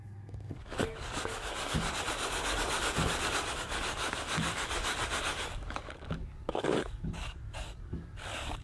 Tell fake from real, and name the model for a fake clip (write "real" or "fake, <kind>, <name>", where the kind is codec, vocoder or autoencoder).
fake, codec, DAC